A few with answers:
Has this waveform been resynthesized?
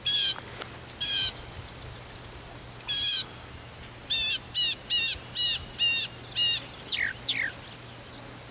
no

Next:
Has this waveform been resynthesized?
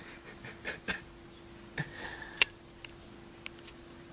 no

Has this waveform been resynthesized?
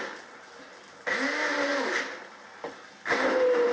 no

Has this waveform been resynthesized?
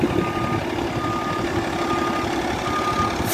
no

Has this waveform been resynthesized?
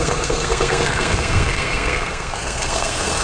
yes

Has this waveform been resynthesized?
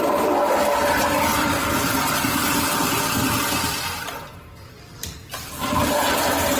yes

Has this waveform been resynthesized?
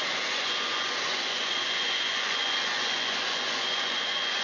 yes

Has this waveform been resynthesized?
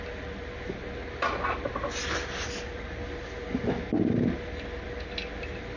no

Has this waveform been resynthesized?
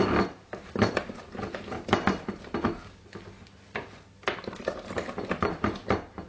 no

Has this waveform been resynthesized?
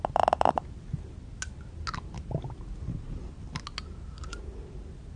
no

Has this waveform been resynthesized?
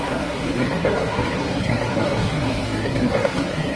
yes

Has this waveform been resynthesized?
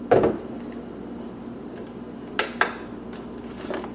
no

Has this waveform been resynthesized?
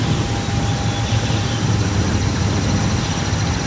no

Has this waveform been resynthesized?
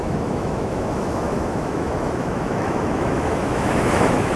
yes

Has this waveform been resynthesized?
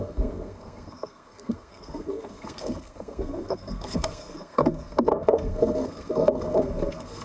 yes